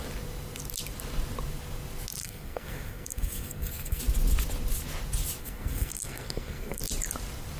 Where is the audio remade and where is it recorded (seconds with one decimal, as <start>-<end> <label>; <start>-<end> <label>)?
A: 0.0-2.2 recorded; 2.2-4.0 remade; 4.0-5.4 recorded; 5.4-6.8 remade; 6.8-7.6 recorded